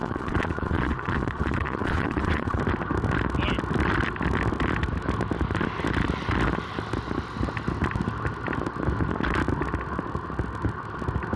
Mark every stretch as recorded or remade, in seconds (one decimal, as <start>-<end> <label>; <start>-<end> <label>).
0.0-2.6 remade; 2.6-11.4 recorded